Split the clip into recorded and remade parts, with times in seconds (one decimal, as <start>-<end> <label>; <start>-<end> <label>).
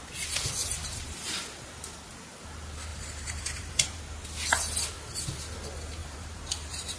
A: 0.0-0.6 recorded; 0.6-2.1 remade; 2.1-2.9 recorded; 2.9-4.0 remade; 4.0-6.0 recorded; 6.0-7.0 remade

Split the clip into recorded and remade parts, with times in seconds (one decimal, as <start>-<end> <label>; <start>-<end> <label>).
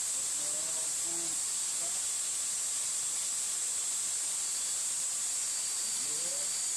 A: 0.0-6.8 recorded